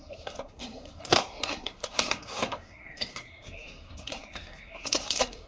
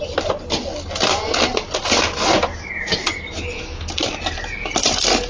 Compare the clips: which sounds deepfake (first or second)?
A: first